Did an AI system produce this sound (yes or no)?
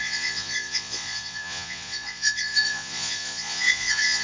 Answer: yes